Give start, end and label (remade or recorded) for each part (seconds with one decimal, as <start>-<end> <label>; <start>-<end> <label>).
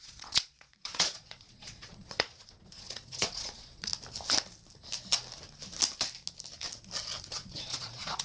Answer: 0.0-3.9 remade; 3.9-7.2 recorded; 7.2-8.2 remade